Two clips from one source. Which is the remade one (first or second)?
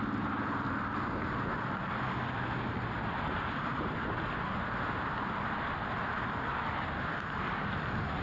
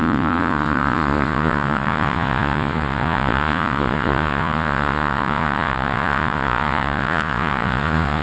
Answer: second